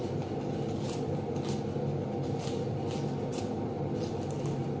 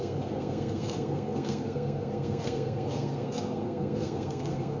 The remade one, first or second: second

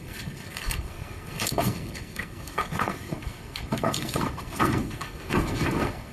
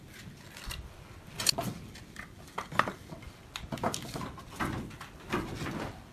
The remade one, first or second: first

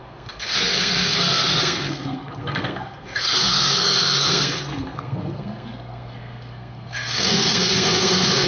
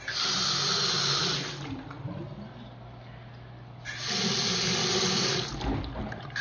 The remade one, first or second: first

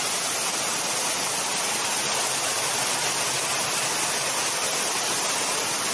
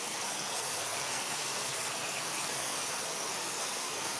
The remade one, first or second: second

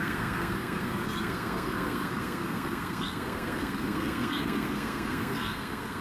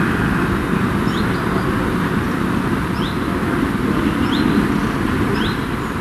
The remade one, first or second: first